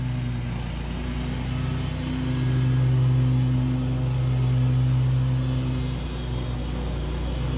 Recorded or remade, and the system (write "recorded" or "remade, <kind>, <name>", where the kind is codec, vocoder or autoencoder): recorded